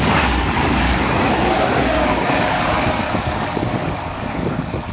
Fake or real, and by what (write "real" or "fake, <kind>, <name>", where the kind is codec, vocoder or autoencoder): fake, codec, DAC